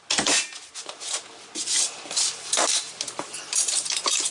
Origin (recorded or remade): recorded